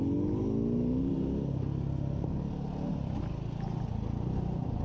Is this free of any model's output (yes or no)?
yes